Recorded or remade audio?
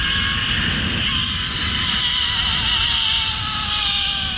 recorded